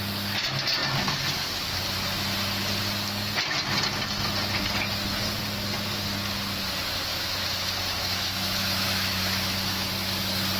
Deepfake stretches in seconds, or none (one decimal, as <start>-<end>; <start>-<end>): 7.1-9.9